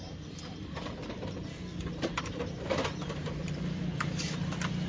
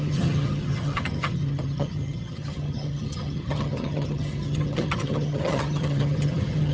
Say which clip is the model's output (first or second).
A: second